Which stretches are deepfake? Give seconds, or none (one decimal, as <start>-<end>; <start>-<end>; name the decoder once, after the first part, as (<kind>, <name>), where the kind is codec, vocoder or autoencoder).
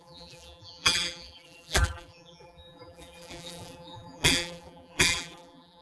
0.0-5.8 (vocoder, BigVGAN v2)